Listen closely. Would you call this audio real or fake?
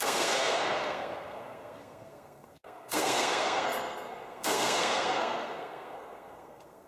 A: fake